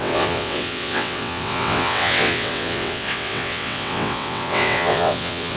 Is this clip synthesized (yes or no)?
yes